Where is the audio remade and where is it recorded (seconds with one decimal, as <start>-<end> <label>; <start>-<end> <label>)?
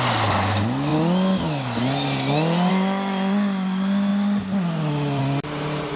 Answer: 0.0-6.0 recorded